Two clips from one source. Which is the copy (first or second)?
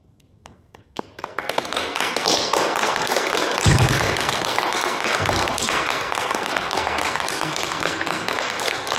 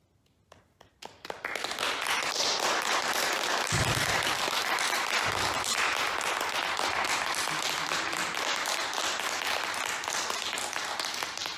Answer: first